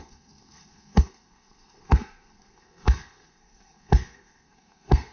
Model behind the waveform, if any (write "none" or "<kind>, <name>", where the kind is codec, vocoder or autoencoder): codec, SNAC